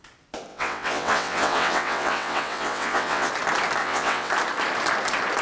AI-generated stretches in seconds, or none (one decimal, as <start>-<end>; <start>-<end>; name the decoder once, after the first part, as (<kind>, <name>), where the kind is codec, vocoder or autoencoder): 0.5-3.3 (vocoder, WaveNeXt); 3.8-4.3